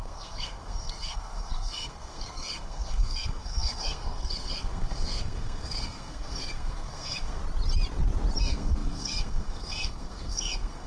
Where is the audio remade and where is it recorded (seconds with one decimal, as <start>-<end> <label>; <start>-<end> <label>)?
0.0-7.4 remade; 7.4-8.4 recorded; 8.4-10.9 remade